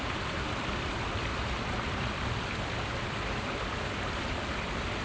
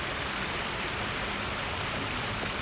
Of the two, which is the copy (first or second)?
first